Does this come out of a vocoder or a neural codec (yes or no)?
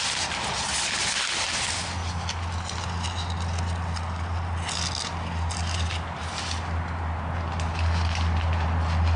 no